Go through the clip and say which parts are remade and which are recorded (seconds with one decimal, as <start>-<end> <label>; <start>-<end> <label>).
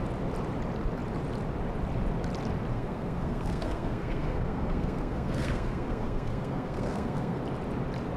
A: 0.0-2.7 recorded; 2.7-7.4 remade; 7.4-8.2 recorded